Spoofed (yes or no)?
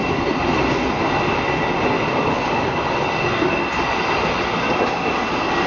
no